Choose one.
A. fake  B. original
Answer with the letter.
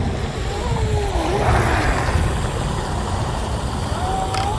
B